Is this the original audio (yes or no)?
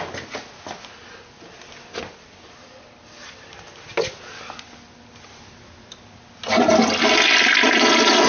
yes